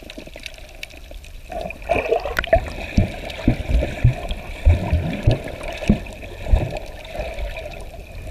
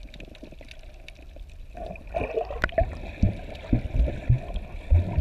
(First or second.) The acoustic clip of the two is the second